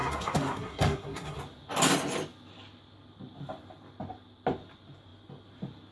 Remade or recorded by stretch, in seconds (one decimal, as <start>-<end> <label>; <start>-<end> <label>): 0.0-1.4 remade; 1.4-5.9 recorded